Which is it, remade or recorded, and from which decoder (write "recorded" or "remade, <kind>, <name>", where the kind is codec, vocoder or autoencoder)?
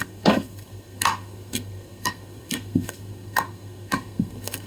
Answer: remade, codec, SNAC